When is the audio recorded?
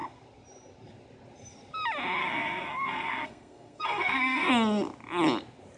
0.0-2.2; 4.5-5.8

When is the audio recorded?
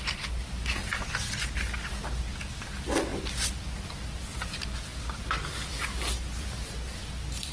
0.0-7.5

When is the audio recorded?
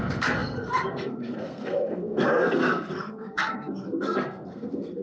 none